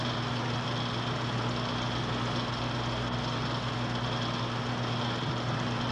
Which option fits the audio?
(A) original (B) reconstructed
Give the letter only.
A